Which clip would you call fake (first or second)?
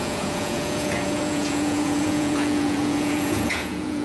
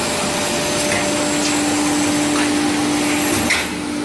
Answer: first